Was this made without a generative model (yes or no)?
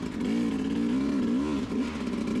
yes